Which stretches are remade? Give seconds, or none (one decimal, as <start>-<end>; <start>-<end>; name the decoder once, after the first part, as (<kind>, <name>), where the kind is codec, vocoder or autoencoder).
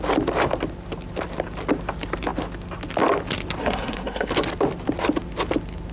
3.6-4.3 (codec, SNAC)